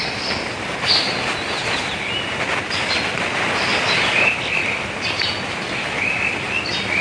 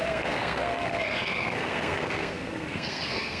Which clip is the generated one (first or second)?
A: second